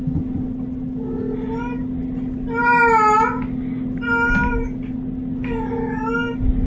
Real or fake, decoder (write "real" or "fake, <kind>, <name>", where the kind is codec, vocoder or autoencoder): real